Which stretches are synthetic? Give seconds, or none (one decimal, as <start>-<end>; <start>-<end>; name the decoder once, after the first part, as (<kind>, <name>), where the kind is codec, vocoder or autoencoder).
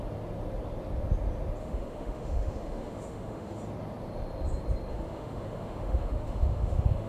1.6-3.6 (autoencoder, DAC-VAE); 4.9-7.1